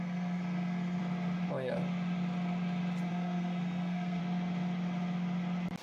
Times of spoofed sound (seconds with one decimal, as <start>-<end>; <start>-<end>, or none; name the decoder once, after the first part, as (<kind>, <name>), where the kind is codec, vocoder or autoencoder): 0.0-1.0 (codec, SNAC); 3.1-4.2